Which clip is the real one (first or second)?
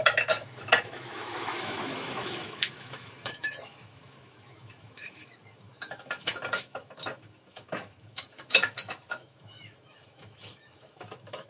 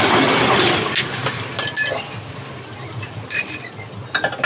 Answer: second